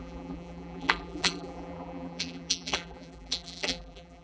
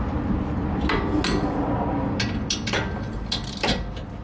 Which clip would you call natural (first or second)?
second